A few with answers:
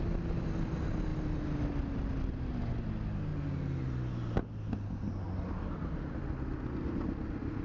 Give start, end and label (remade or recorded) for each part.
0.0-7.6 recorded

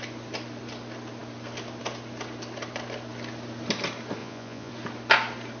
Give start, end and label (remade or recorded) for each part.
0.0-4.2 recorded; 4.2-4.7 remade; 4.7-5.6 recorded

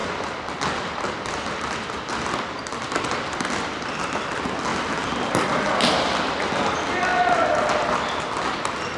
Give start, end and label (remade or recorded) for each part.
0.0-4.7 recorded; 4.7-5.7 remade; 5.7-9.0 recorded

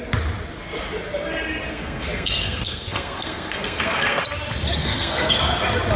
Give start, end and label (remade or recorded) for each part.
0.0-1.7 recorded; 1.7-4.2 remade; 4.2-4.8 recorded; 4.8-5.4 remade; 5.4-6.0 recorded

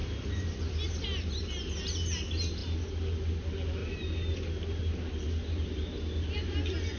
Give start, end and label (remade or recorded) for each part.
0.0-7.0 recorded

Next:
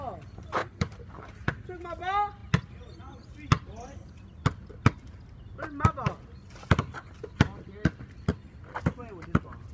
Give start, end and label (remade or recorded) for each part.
0.0-0.6 recorded; 0.6-1.8 remade; 1.8-9.7 recorded